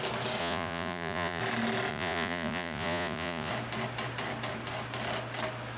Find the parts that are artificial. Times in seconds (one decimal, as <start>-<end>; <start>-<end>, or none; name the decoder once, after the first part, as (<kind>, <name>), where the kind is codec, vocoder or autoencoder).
0.4-1.4 (vocoder, Vocos); 1.9-3.5